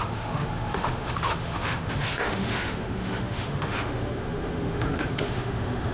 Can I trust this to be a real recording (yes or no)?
no